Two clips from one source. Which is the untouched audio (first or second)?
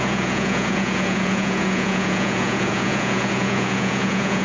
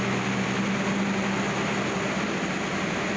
second